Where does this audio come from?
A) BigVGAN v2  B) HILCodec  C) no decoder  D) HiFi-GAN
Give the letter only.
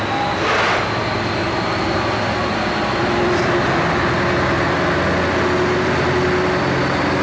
C